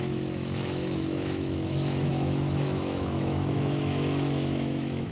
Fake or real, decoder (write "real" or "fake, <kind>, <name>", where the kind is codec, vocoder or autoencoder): fake, autoencoder, DAC-VAE